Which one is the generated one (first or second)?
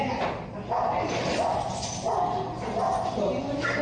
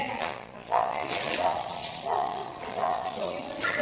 second